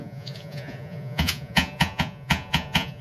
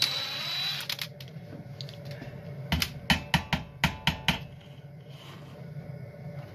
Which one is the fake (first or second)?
first